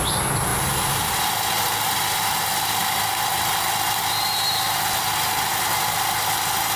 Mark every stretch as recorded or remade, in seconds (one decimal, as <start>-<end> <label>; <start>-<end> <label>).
0.0-6.8 recorded